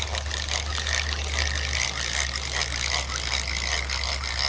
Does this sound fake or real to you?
real